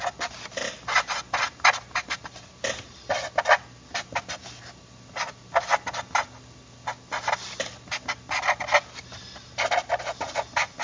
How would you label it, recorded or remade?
recorded